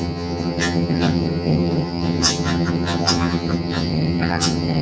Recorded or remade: remade